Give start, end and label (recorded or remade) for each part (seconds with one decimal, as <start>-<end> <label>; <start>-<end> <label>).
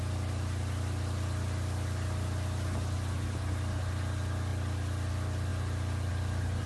0.0-6.7 recorded